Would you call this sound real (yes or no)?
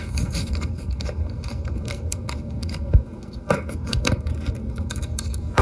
no